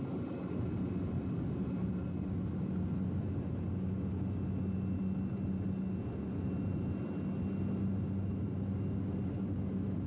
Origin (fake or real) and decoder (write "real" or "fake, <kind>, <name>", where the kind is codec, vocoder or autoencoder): real